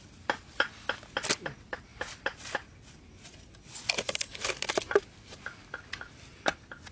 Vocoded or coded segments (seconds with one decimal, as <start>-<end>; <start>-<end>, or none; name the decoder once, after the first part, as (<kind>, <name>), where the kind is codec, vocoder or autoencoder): none